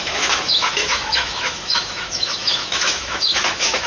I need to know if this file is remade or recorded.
remade